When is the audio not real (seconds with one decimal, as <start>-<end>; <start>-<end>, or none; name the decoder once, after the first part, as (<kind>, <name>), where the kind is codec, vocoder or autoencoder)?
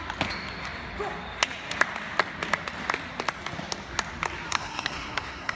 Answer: 4.5-5.6 (codec, SNAC)